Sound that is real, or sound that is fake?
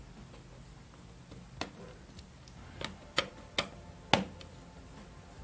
real